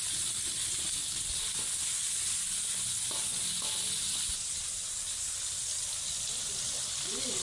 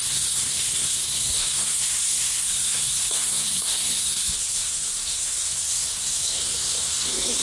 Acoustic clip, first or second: first